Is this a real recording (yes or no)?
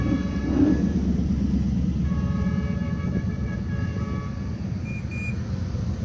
yes